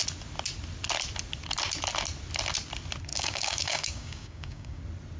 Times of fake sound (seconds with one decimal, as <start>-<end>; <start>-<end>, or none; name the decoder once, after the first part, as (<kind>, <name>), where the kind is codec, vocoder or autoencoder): 3.1-4.8 (codec, DAC)